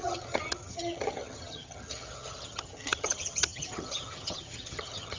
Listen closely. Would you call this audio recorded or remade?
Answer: remade